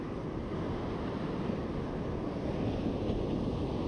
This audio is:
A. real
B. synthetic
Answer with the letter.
A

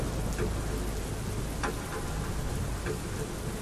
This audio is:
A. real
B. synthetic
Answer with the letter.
A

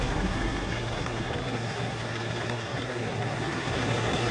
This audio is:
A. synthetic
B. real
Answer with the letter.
A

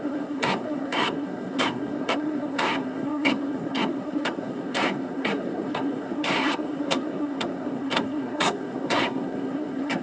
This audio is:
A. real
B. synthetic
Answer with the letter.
B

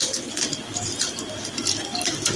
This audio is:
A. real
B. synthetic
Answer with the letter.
A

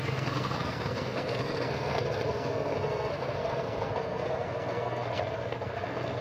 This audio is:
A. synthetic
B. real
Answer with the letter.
A